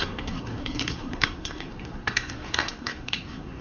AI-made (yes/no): yes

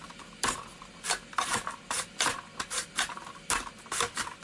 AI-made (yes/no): no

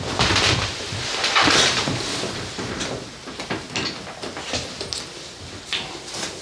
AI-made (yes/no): no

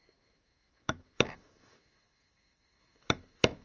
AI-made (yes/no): yes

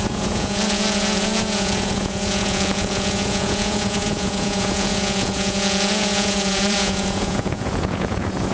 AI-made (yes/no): yes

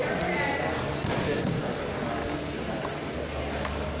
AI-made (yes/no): no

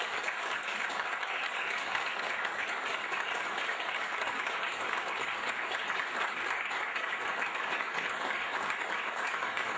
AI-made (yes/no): yes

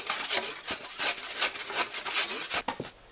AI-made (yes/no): no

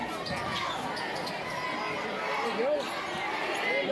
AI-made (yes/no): no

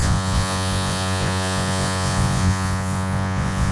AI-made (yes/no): yes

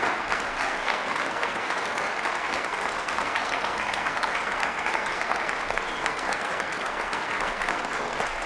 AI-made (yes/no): yes